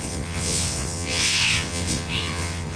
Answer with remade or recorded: remade